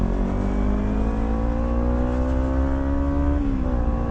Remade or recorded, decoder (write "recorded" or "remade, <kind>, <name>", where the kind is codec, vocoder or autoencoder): recorded